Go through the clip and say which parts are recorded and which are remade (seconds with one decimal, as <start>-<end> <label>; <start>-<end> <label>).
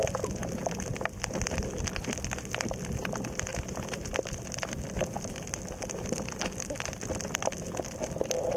0.0-8.6 recorded